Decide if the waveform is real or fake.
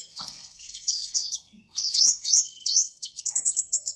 fake